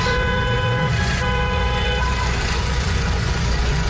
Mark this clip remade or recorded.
remade